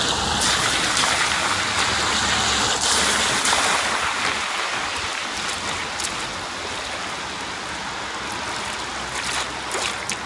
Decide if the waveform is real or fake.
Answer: real